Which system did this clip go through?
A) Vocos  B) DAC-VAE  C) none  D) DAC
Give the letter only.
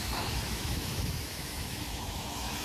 B